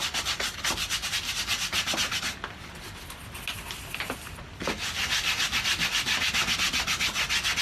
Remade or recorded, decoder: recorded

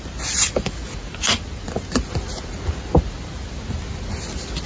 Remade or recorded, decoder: recorded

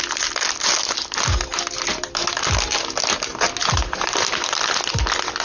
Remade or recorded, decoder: recorded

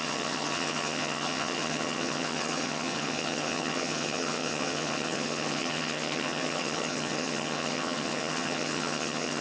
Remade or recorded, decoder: remade, vocoder, HiFi-GAN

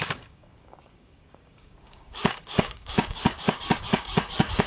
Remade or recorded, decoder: remade, codec, DAC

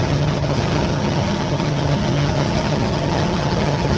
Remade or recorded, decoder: remade, vocoder, HiFi-GAN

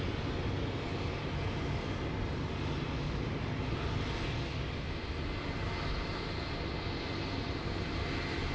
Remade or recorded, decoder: recorded